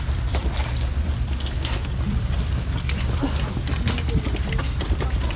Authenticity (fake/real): real